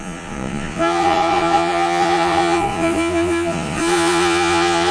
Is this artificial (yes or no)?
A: yes